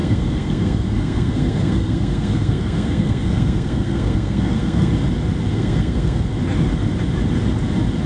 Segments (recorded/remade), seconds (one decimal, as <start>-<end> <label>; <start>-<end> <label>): 0.0-4.9 remade; 4.9-5.5 recorded; 5.5-6.3 remade; 6.3-8.1 recorded